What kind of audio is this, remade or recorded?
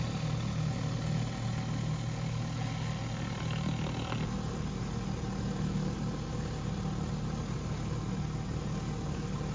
recorded